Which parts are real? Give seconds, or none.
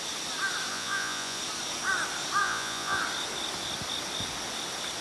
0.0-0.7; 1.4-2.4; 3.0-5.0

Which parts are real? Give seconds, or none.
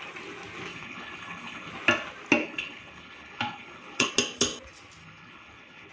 0.0-0.7; 1.7-2.4; 4.1-5.0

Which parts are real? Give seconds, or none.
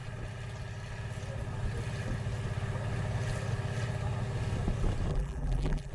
0.0-5.1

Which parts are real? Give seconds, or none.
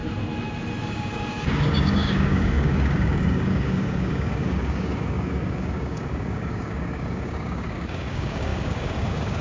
0.0-0.8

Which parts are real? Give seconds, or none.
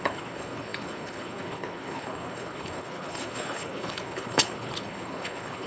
none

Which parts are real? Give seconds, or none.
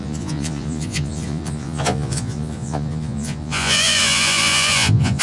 none